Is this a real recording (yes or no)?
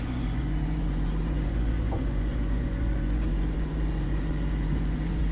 no